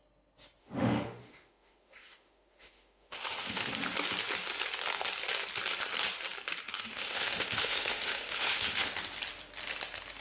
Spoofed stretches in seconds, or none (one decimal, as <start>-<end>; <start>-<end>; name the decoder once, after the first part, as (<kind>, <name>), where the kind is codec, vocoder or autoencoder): 0.6-3.7 (autoencoder, DAC-VAE); 6.7-8.9